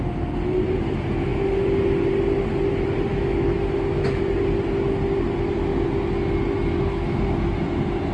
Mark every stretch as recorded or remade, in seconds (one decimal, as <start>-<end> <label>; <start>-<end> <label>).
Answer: 0.0-3.1 recorded; 3.1-4.2 remade; 4.2-8.1 recorded